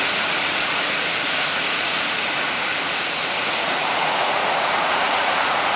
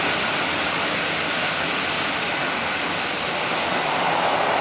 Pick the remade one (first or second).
first